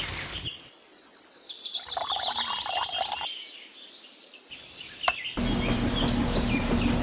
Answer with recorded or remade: recorded